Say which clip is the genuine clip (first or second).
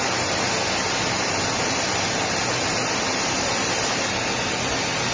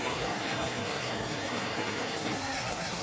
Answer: first